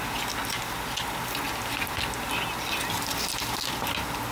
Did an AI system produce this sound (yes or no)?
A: no